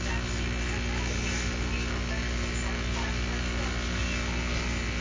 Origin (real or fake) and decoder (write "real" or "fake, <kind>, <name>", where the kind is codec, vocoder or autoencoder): real